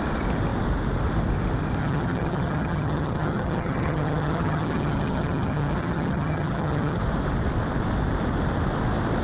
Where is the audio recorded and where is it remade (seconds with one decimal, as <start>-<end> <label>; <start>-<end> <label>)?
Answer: 0.0-1.8 recorded; 1.8-7.0 remade; 7.0-9.2 recorded

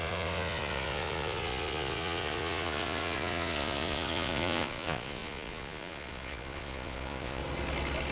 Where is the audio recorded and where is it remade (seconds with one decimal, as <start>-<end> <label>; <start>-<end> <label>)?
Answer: 0.0-7.4 remade; 7.4-8.1 recorded

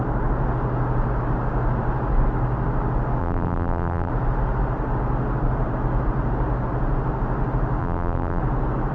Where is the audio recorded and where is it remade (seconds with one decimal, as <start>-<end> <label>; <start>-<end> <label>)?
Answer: 0.0-3.2 recorded; 3.2-4.1 remade; 4.1-7.8 recorded; 7.8-8.4 remade; 8.4-8.9 recorded

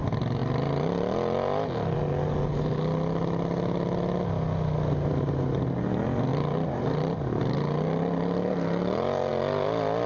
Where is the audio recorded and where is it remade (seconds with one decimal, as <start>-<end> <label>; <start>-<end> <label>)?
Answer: 0.0-6.3 recorded; 6.3-7.4 remade; 7.4-10.1 recorded

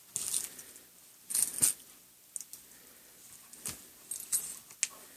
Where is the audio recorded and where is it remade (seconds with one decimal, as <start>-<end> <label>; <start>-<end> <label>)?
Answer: 0.0-5.2 recorded

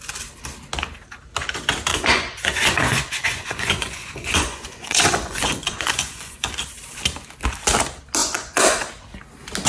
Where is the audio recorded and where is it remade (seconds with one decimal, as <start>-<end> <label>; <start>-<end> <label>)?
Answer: 0.0-1.9 recorded; 1.9-6.5 remade; 6.5-8.2 recorded; 8.2-8.9 remade; 8.9-9.7 recorded